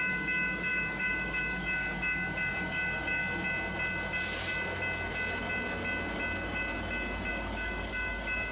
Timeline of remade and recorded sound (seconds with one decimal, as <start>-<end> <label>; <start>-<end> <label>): 0.0-3.2 remade; 3.2-7.3 recorded; 7.3-8.5 remade

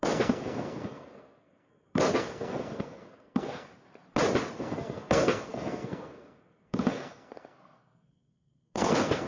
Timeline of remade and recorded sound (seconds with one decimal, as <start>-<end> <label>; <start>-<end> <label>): 0.0-3.7 remade; 3.7-4.6 recorded; 4.6-9.3 remade

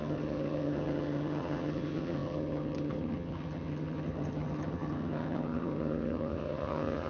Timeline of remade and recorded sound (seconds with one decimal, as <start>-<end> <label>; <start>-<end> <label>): 0.0-7.1 remade

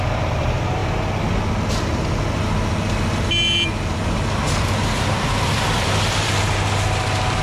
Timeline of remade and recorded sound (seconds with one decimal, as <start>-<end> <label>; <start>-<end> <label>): 0.0-0.8 remade; 0.8-4.6 recorded; 4.6-7.4 remade

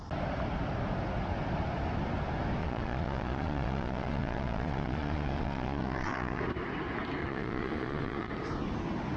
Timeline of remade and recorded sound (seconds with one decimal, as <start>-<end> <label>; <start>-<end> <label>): 0.0-2.6 recorded; 2.6-6.4 remade; 6.4-7.2 recorded; 7.2-8.3 remade; 8.3-9.2 recorded

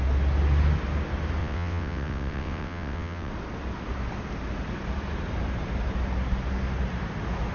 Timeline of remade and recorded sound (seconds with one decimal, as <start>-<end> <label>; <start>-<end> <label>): 0.0-1.4 recorded; 1.4-3.3 remade; 3.3-7.5 recorded

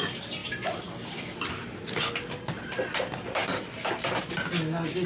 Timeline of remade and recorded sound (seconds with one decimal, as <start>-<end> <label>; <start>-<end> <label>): 0.0-0.4 recorded; 0.4-1.5 remade; 1.5-5.1 recorded

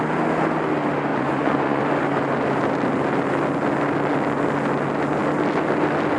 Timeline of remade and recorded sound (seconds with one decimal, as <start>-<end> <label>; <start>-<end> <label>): 0.0-1.1 recorded; 1.1-1.8 remade; 1.8-6.2 recorded